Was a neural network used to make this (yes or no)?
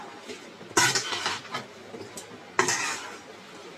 no